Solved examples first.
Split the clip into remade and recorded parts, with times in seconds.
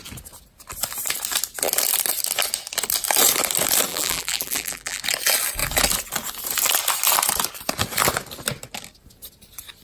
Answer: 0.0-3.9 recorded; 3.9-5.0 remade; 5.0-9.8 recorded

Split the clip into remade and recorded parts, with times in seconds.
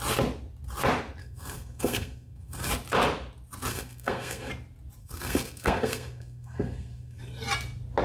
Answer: 0.0-1.2 recorded; 1.2-2.7 remade; 2.7-3.7 recorded; 3.7-4.5 remade; 4.5-5.0 recorded; 5.0-7.2 remade; 7.2-8.0 recorded